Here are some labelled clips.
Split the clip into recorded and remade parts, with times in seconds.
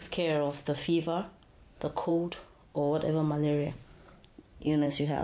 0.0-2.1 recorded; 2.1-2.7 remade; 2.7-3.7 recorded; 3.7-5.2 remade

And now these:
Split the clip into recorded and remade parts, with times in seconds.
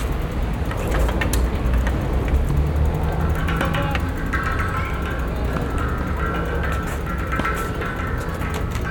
0.0-0.4 recorded; 0.4-0.9 remade; 0.9-8.9 recorded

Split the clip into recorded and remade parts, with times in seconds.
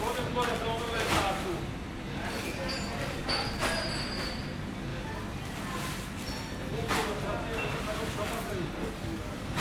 0.0-8.8 recorded; 8.8-9.6 remade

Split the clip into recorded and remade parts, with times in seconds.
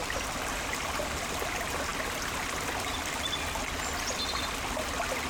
0.0-5.3 recorded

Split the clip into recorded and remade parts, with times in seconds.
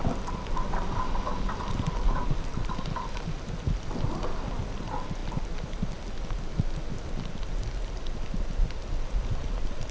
0.0-9.9 recorded